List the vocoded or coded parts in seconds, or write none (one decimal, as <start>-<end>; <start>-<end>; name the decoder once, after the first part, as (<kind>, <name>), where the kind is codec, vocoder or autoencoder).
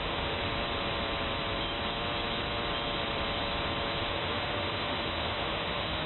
0.0-0.4 (autoencoder, DAC-VAE); 4.1-6.1